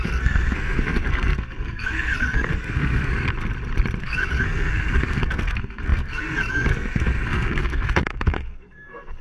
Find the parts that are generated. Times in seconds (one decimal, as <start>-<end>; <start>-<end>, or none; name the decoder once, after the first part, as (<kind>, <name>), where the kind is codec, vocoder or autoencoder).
0.0-3.1 (codec, SNAC); 4.0-9.2